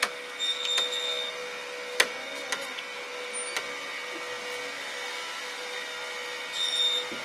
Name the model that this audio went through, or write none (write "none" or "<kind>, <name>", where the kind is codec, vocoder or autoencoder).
none